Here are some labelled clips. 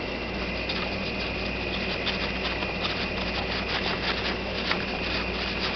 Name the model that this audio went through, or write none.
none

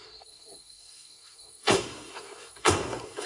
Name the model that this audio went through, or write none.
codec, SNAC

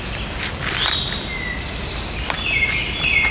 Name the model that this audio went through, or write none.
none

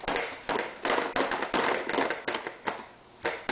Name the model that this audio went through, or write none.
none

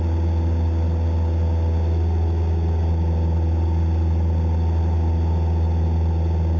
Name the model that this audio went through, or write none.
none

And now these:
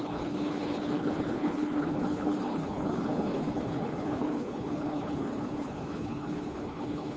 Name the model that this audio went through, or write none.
codec, HILCodec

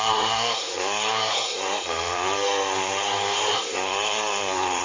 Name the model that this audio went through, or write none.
codec, SNAC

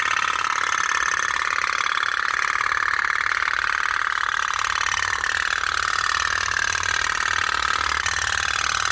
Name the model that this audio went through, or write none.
none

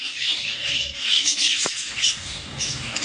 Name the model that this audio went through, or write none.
codec, DAC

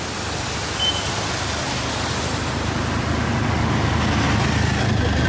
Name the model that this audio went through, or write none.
none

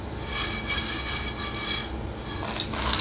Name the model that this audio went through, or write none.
none